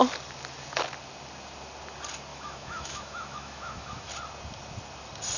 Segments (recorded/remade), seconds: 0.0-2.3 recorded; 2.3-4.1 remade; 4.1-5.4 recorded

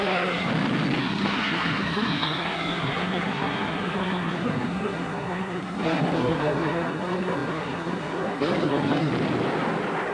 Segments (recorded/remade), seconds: 0.0-0.5 remade; 0.5-1.0 recorded; 1.0-9.1 remade; 9.1-10.1 recorded

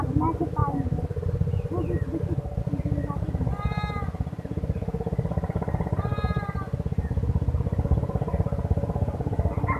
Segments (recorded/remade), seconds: 0.0-9.8 recorded

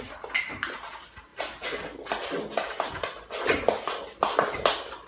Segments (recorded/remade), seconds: 0.0-5.1 recorded

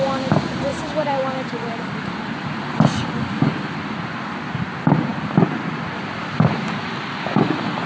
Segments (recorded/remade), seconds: 0.0-0.7 recorded; 0.7-2.1 remade; 2.1-5.1 recorded; 5.1-7.1 remade; 7.1-7.9 recorded